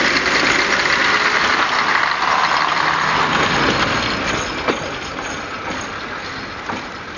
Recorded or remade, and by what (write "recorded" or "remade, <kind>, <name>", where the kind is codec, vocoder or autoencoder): recorded